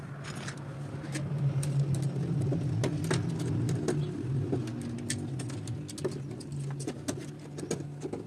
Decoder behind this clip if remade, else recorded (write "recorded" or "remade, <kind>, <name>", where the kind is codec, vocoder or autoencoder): recorded